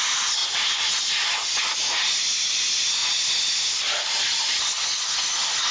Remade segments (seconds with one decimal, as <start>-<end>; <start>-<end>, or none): none